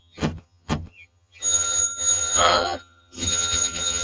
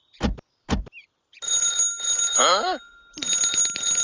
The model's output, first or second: first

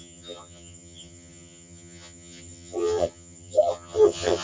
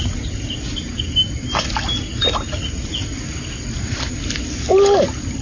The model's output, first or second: first